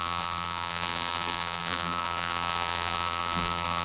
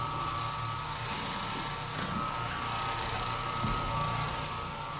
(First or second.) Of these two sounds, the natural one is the second